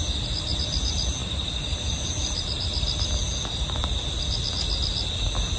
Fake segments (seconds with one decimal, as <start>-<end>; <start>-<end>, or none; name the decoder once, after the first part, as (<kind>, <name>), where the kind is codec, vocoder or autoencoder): none